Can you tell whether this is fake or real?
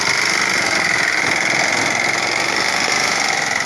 real